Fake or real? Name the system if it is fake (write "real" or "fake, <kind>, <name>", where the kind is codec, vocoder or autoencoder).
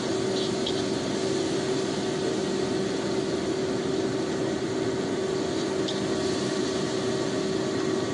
real